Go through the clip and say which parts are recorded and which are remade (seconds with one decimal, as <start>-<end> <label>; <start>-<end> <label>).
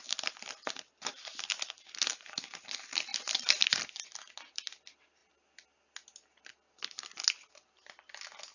0.0-8.5 recorded